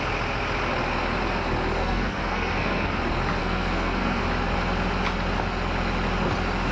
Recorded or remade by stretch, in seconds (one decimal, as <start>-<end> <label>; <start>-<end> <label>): 0.0-1.8 recorded; 1.8-3.0 remade; 3.0-3.4 recorded; 3.4-4.2 remade; 4.2-6.7 recorded